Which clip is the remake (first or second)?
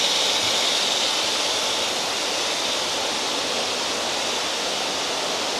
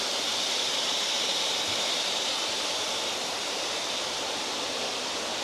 second